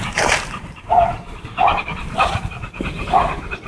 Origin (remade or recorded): remade